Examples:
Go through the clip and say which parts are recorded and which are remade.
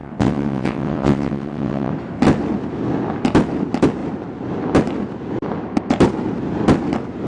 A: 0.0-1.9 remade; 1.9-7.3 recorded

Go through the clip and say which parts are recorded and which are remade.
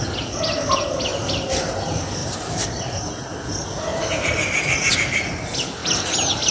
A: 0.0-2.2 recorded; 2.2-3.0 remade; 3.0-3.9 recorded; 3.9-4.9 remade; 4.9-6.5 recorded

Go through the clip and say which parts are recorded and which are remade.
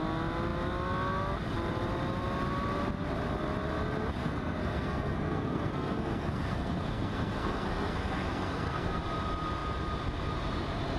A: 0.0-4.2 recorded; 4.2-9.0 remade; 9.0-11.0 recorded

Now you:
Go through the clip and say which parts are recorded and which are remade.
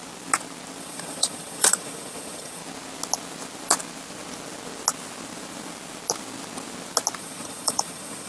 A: 0.0-0.8 recorded; 0.8-2.6 remade; 2.6-7.2 recorded; 7.2-8.3 remade